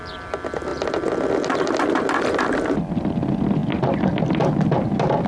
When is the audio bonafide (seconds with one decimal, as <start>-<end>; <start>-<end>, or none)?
0.0-5.3